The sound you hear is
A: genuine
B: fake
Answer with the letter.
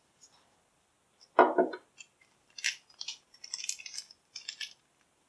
A